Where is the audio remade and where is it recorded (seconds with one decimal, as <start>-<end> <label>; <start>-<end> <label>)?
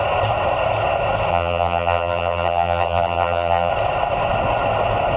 0.0-1.3 recorded; 1.3-3.7 remade; 3.7-5.2 recorded